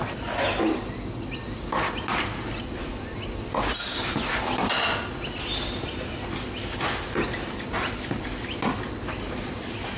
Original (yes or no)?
yes